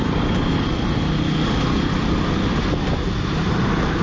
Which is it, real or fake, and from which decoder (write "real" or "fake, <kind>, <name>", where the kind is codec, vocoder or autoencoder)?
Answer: real